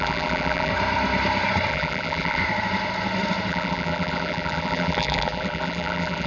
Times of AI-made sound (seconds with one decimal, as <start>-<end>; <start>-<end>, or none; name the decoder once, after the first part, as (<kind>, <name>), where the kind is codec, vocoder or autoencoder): 0.0-0.7 (vocoder, BigVGAN v2); 1.7-2.4; 3.5-6.3